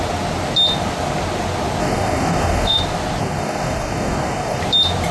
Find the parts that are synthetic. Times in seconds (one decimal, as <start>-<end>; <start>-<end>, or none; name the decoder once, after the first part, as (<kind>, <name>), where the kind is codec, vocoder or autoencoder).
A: 1.8-2.8 (codec, DAC); 3.2-4.6